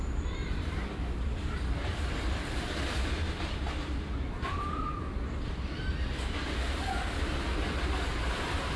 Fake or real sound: fake